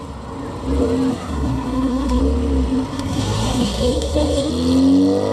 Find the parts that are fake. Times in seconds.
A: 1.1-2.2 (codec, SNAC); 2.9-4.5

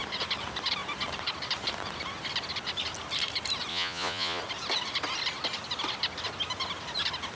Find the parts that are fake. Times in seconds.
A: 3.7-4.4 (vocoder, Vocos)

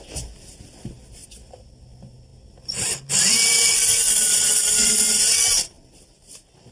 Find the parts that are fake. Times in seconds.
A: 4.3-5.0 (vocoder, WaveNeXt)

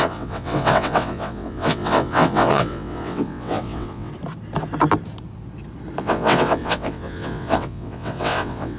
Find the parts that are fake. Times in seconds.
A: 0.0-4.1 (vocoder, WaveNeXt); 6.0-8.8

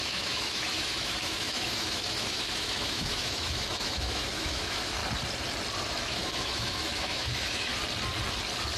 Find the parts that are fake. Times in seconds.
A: 0.0-5.0 (autoencoder, DAC-VAE); 5.9-7.7

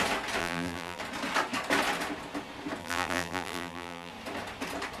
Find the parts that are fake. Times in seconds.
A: 0.4-1.0 (vocoder, BigVGAN v2); 2.8-4.1

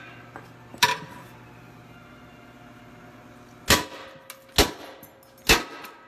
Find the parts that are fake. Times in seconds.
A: 0.7-1.4 (vocoder, BigVGAN v2)